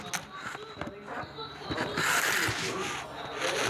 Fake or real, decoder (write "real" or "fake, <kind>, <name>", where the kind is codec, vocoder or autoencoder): real